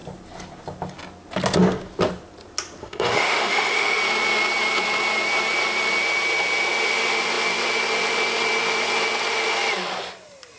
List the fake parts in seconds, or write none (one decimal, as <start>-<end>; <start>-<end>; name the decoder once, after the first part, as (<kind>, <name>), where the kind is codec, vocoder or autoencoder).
2.8-4.0 (autoencoder, DAC-VAE)